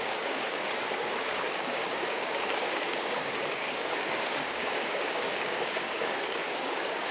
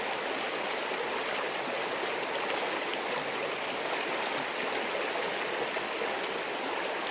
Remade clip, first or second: first